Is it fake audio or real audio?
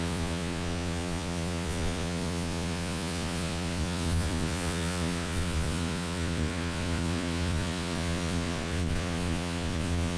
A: fake